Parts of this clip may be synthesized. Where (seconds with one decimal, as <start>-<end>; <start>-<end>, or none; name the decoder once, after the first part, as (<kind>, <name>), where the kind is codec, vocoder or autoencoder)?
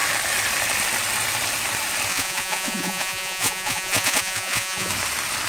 2.1-4.9 (vocoder, Vocos)